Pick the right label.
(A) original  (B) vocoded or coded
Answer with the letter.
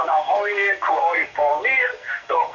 B